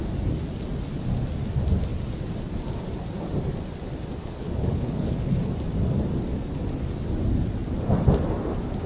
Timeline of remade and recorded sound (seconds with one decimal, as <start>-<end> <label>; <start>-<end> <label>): 0.0-4.2 recorded; 4.2-5.5 remade; 5.5-8.9 recorded